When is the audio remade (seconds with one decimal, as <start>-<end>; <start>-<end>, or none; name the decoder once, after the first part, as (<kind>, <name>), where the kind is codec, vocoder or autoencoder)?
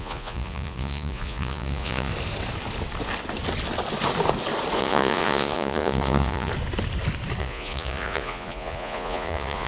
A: 0.0-2.1 (vocoder, Vocos); 4.8-6.5; 7.4-9.7